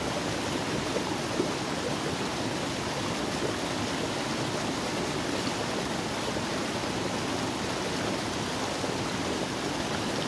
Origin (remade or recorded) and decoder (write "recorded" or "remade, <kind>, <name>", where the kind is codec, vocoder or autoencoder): recorded